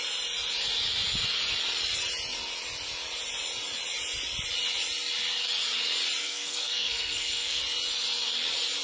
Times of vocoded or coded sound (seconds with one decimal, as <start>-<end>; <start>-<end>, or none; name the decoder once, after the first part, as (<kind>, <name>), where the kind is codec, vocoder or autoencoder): 6.2-7.6 (codec, SNAC)